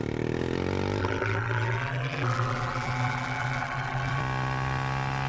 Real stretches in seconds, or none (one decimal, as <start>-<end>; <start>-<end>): 0.0-1.0; 4.2-5.3